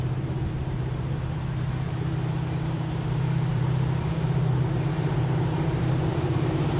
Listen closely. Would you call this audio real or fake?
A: fake